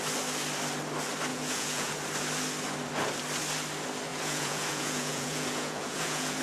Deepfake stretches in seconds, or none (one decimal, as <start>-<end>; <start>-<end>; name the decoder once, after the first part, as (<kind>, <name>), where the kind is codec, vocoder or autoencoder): 1.3-1.9 (vocoder, Vocos); 4.1-6.4